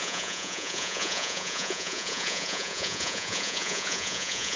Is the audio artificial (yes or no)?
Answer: yes